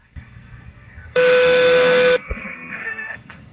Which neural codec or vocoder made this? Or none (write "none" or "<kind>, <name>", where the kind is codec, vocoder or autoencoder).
codec, SNAC